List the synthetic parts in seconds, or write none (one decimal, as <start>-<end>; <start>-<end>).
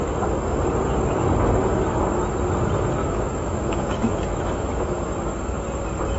3.0-4.7